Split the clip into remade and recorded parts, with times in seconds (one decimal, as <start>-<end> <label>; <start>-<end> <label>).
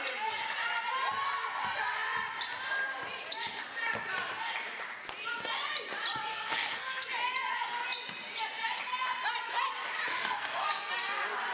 0.0-6.3 recorded; 6.3-7.1 remade; 7.1-10.1 recorded; 10.1-10.9 remade; 10.9-11.5 recorded